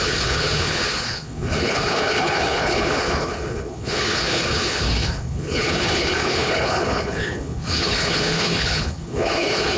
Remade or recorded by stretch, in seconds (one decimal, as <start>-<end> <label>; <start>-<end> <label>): 0.0-9.8 remade